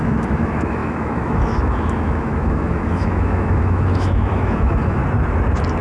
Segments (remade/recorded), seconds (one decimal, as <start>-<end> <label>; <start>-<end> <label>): 0.0-5.0 remade; 5.0-5.8 recorded